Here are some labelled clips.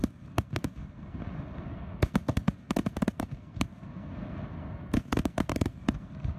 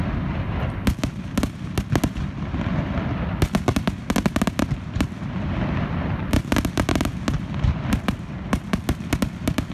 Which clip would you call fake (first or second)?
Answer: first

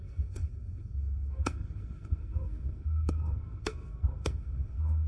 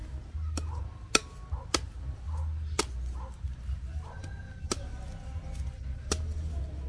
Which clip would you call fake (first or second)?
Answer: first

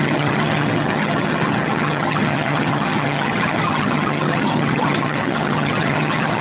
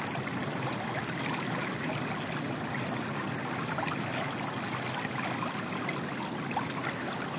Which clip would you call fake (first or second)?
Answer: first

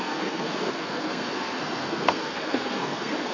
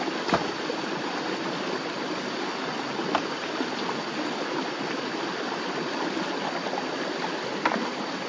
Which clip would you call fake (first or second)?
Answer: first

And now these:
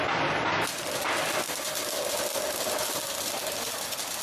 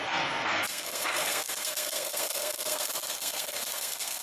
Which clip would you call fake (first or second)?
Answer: second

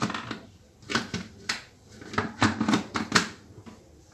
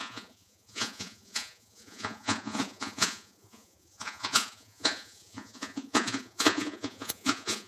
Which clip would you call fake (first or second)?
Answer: second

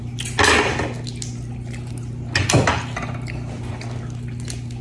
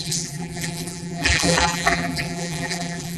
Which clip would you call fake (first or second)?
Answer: second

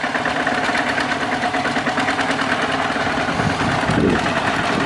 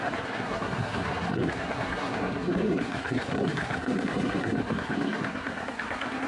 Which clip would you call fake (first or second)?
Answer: second